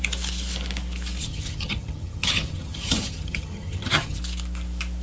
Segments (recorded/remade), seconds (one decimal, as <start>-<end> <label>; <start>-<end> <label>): 0.0-1.2 recorded; 1.2-4.2 remade; 4.2-5.0 recorded